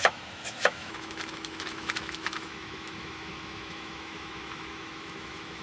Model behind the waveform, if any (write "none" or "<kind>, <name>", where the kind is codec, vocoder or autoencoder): autoencoder, DAC-VAE